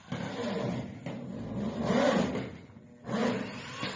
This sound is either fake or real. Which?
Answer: real